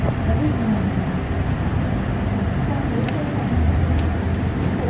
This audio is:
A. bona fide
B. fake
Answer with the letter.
A